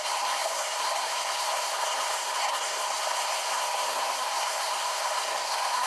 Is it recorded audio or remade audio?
remade